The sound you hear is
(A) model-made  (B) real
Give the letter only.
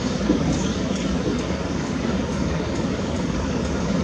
A